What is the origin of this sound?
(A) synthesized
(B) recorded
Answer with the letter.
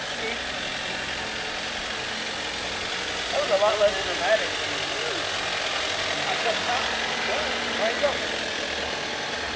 B